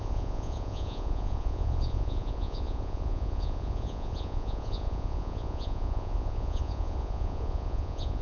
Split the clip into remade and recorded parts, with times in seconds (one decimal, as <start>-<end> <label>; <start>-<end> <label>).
0.0-8.2 remade